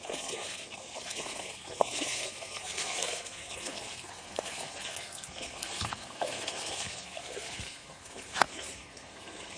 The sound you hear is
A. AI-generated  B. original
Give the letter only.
A